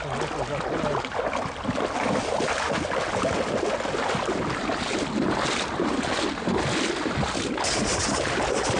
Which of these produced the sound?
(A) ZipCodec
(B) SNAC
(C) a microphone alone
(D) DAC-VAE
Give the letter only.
C